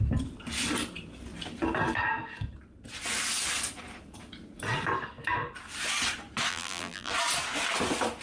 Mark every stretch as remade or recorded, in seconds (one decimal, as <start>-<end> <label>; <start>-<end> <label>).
0.0-6.5 recorded; 6.5-7.1 remade; 7.1-8.2 recorded